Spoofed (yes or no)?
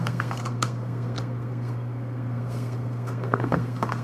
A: yes